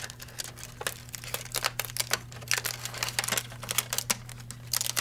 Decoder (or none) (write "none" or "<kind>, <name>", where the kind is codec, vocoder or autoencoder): none